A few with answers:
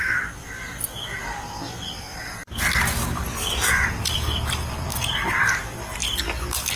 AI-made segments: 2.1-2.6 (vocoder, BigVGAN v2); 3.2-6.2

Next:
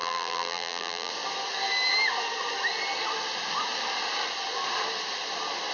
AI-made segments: 0.0-1.1 (vocoder, BigVGAN v2)

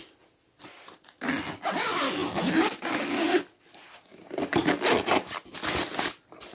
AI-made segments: 4.1-5.1 (vocoder, BigVGAN v2)

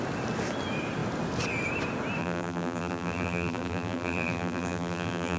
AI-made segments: 2.2-5.4 (vocoder, BigVGAN v2)

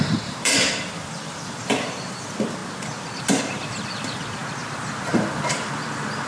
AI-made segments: 0.0-2.6 (vocoder, BigVGAN v2); 3.4-4.4; 5.1-6.3